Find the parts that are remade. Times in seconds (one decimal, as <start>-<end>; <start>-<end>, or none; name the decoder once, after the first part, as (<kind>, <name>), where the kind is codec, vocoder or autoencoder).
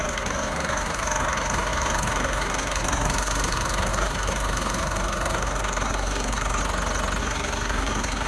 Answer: 0.0-6.6 (codec, SNAC); 7.2-8.3